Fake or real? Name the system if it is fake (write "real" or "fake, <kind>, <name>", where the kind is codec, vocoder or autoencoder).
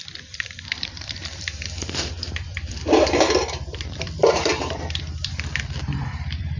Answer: fake, vocoder, BigVGAN v2